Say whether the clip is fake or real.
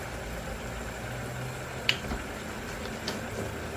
real